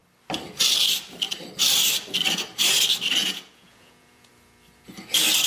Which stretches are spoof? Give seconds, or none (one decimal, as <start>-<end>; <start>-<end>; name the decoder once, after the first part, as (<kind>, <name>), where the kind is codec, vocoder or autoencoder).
3.2-4.3 (vocoder, Vocos)